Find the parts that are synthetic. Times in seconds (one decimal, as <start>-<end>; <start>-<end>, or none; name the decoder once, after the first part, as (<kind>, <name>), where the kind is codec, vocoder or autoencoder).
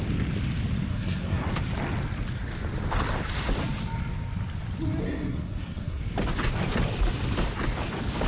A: 0.9-1.5 (codec, SNAC); 5.0-6.0